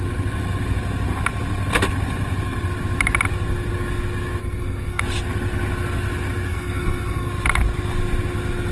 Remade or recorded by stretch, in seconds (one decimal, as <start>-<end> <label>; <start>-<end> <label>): 0.0-4.4 recorded; 4.4-5.0 remade; 5.0-6.5 recorded; 6.5-7.3 remade; 7.3-8.7 recorded